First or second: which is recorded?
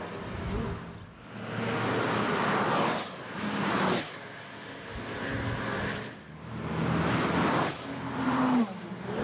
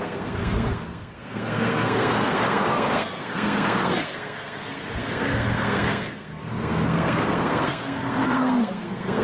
first